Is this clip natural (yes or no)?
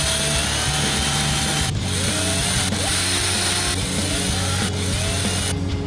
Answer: yes